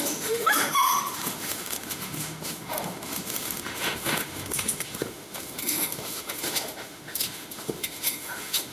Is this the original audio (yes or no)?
no